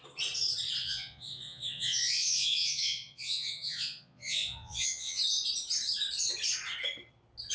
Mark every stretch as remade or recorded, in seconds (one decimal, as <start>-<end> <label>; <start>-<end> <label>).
0.0-0.8 recorded; 0.8-5.2 remade; 5.2-7.5 recorded